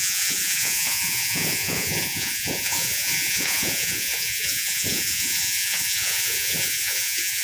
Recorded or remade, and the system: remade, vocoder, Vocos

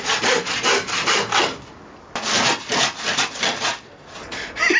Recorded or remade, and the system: recorded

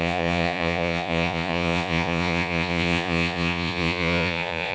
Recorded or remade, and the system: remade, vocoder, Vocos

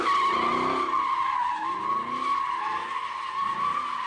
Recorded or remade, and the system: recorded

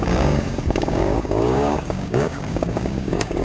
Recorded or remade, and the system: remade, codec, DAC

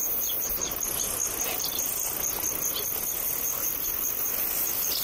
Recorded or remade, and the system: recorded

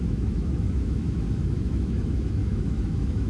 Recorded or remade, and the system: remade, autoencoder, DAC-VAE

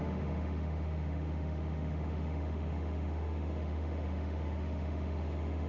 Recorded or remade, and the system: remade, autoencoder, DAC-VAE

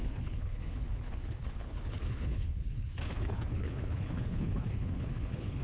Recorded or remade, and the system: remade, codec, HILCodec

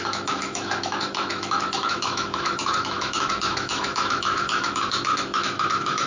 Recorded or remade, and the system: remade, autoencoder, DAC-VAE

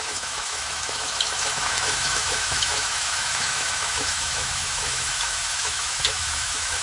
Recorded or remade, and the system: remade, autoencoder, DAC-VAE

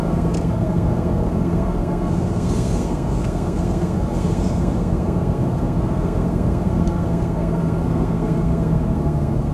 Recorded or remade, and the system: remade, codec, SNAC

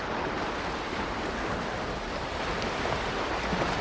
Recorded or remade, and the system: recorded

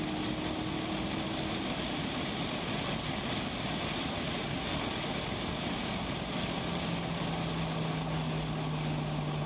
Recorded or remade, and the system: recorded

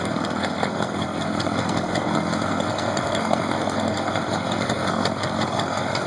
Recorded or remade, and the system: remade, codec, SNAC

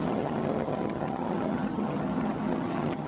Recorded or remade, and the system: remade, vocoder, HiFi-GAN